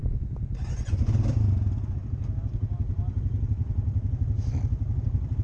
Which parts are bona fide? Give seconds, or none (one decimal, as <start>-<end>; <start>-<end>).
0.0-5.4